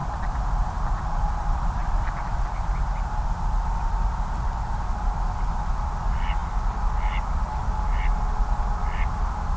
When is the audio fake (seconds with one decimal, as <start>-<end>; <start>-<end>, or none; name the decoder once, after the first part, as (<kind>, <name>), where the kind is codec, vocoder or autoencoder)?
0.0-2.8 (vocoder, BigVGAN v2); 6.4-9.2